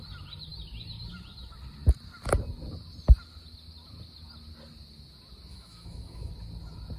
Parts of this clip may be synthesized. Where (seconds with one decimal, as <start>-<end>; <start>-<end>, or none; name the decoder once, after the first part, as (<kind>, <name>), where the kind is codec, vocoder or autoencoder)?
5.5-6.3 (autoencoder, DAC-VAE)